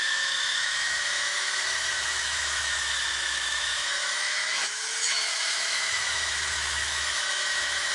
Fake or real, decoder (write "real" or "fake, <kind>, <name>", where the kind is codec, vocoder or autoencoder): fake, autoencoder, DAC-VAE